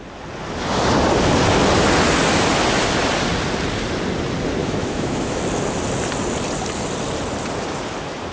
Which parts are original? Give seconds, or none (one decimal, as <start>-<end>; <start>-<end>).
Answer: 0.0-4.6; 5.4-8.3